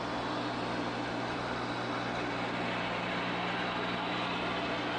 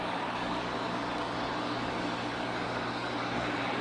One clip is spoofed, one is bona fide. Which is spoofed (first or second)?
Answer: second